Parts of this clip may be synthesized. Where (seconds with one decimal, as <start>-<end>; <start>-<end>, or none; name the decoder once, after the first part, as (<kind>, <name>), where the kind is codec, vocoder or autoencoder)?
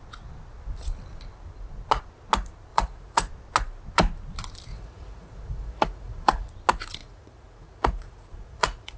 2.7-3.3 (vocoder, Vocos); 4.7-6.5; 7.0-9.0